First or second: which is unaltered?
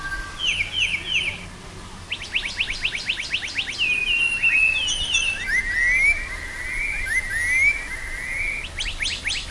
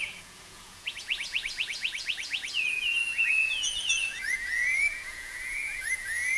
first